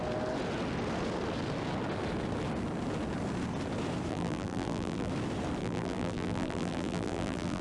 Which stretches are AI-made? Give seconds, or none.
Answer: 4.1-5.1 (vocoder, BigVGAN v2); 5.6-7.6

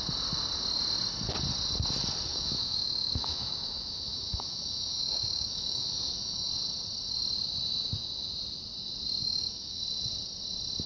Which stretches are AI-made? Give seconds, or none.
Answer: 2.3-6.5 (autoencoder, DAC-VAE); 9.2-9.8

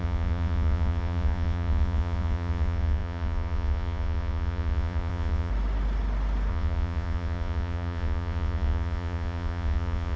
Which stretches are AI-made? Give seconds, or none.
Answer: 0.0-5.5 (vocoder, Vocos); 6.5-10.2

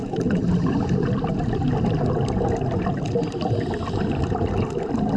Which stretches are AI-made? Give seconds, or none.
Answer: none

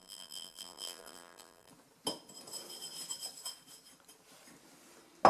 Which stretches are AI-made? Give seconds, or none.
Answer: 0.0-1.7 (vocoder, BigVGAN v2)

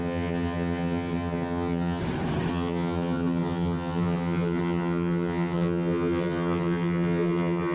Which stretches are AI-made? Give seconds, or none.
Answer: 0.0-2.0 (vocoder, HiFi-GAN); 2.5-7.7

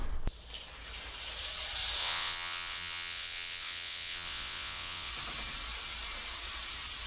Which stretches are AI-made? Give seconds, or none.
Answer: 2.0-5.1 (vocoder, WaveNeXt)

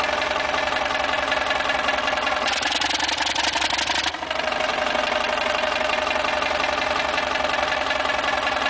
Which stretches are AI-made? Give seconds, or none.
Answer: none